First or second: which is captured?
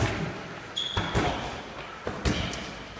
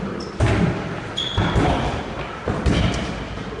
first